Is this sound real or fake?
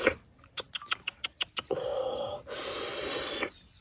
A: real